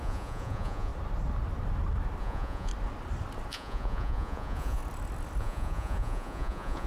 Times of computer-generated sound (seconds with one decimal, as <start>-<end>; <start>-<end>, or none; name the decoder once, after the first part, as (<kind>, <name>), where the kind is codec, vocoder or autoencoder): 0.0-0.9 (vocoder, Vocos); 2.2-2.7; 3.5-4.8; 5.4-6.9